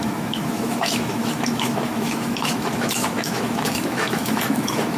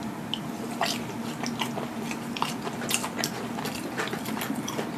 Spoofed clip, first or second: first